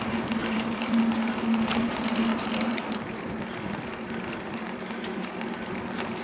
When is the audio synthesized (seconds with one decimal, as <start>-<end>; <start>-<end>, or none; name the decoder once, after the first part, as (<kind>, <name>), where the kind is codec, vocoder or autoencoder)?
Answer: 0.4-1.0 (vocoder, BigVGAN v2); 2.3-4.8